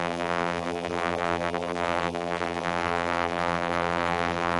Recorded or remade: remade